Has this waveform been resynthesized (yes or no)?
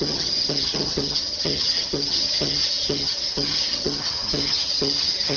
yes